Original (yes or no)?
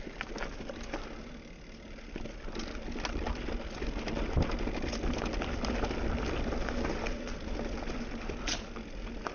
yes